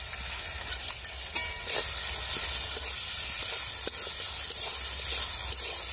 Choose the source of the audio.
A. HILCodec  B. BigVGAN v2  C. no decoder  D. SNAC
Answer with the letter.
C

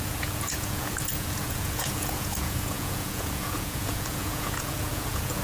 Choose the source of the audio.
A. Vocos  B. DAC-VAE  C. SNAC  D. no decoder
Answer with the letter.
A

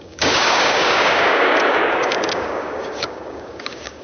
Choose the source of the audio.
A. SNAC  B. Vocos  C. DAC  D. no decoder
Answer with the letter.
C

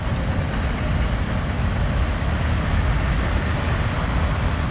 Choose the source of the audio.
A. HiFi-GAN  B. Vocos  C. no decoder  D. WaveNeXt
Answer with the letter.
C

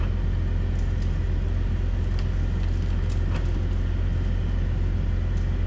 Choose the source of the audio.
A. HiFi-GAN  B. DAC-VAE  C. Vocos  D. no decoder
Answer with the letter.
D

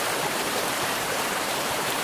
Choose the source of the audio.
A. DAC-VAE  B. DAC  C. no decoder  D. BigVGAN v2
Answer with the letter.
D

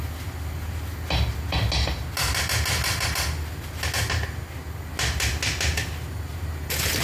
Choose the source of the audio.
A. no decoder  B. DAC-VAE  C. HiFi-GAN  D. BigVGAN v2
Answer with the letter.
A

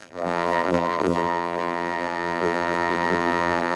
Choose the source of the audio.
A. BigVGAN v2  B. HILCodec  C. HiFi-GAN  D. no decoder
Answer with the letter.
A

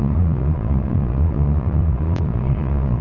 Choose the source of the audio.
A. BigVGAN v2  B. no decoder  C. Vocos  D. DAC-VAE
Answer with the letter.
C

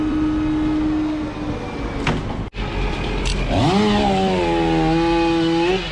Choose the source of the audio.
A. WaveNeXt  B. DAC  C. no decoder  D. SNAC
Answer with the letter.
C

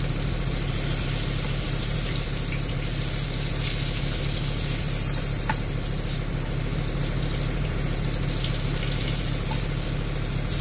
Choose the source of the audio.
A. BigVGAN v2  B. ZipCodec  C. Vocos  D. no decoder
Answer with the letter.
D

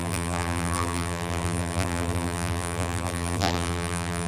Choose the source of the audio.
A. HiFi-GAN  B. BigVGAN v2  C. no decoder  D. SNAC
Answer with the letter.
B